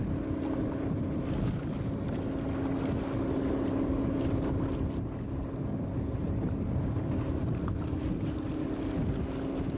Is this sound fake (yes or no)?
no